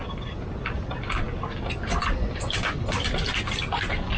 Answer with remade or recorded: recorded